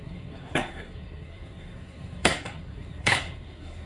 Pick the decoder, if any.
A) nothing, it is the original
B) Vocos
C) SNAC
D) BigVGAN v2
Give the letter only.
C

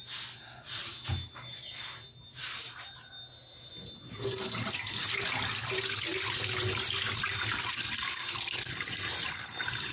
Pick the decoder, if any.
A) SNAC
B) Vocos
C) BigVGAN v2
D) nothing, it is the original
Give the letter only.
D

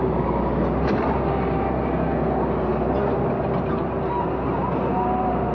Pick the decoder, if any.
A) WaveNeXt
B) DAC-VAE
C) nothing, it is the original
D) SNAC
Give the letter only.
C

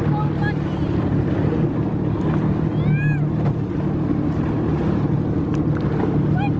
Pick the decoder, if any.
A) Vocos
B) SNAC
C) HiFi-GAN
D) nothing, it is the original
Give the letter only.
D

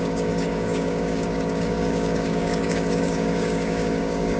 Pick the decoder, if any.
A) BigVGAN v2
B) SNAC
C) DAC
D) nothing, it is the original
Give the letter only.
C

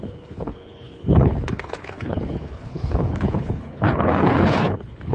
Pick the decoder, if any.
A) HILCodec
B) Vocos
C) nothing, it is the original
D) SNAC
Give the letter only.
A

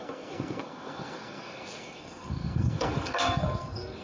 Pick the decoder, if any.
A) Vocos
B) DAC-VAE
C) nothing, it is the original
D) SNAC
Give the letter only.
D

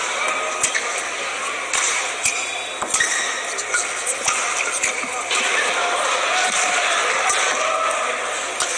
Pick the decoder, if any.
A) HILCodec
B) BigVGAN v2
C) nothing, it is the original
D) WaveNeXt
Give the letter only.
C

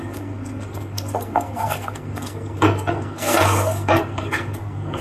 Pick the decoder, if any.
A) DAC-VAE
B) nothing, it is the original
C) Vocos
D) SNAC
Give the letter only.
D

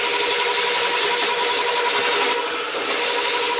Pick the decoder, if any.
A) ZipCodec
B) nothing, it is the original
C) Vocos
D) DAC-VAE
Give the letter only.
B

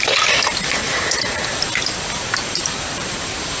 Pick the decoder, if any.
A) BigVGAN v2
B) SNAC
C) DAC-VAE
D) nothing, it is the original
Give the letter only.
A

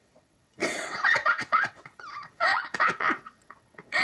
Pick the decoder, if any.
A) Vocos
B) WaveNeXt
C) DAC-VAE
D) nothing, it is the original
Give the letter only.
B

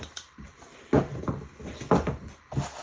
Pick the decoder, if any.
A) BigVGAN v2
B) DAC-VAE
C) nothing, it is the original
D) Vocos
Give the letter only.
C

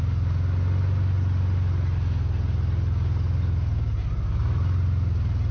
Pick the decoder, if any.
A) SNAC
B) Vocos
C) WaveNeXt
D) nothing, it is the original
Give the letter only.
D